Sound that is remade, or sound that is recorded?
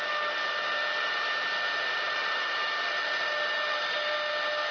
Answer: recorded